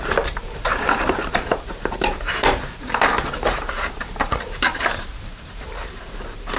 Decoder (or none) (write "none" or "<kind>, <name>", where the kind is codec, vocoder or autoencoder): vocoder, BigVGAN v2